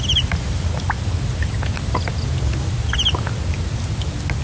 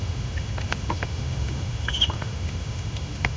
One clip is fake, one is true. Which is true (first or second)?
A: first